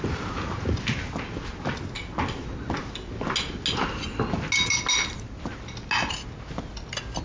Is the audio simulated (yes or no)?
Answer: no